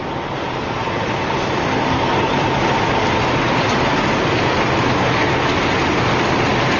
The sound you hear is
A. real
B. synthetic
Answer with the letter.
A